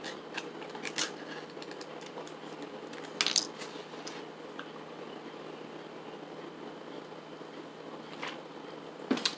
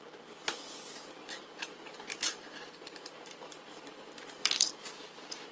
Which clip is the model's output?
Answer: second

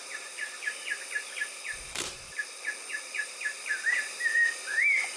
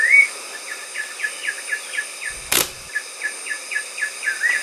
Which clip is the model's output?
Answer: first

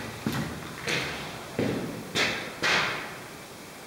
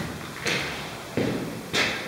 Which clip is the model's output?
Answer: second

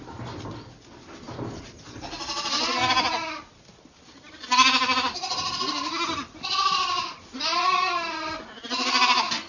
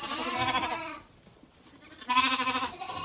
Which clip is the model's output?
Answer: second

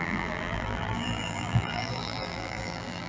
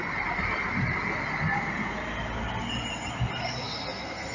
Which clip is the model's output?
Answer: first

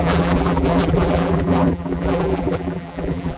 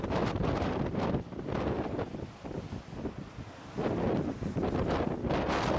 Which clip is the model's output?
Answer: first